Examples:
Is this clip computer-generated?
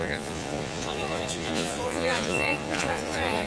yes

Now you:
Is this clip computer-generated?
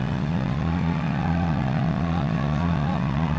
yes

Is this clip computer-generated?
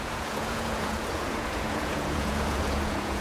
yes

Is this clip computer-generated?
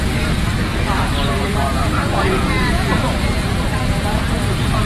yes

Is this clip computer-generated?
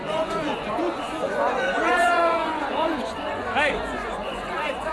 yes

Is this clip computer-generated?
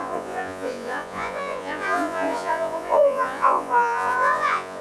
yes